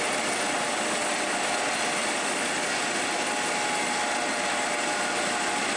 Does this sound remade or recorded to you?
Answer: recorded